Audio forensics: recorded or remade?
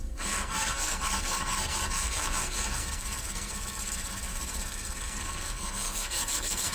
remade